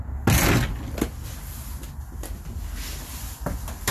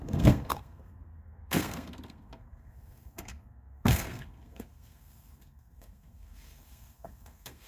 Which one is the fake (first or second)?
second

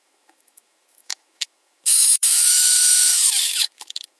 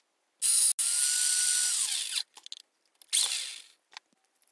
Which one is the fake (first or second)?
first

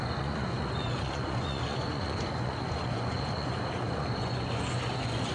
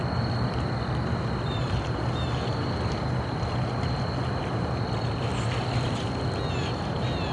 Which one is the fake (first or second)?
first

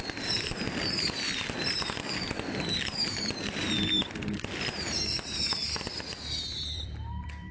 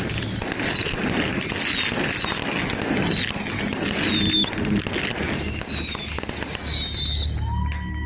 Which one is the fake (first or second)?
first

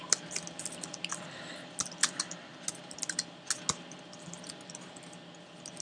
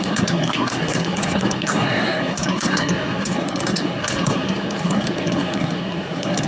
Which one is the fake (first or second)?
second